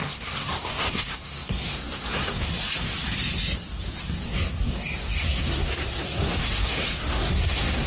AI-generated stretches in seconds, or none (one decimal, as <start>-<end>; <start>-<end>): 0.0-2.5; 4.2-7.9